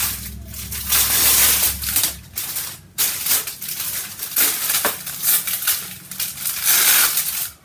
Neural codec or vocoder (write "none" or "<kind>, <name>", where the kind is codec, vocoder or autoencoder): none